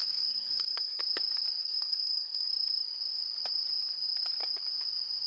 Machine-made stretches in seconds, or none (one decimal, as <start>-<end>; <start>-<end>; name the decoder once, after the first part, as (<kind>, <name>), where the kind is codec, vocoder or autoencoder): 0.0-1.0 (codec, SNAC); 1.6-2.5